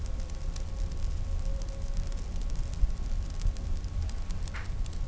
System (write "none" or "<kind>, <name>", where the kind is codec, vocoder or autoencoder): vocoder, BigVGAN v2